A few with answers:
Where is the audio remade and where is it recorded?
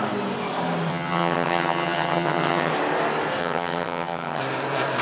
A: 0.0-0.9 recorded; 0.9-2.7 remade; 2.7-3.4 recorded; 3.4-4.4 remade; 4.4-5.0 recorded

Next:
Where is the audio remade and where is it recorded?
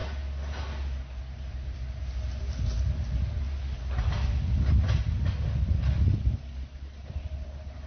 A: 0.0-7.9 recorded